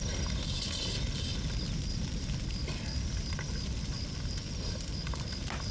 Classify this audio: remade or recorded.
recorded